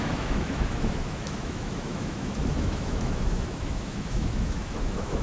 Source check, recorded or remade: remade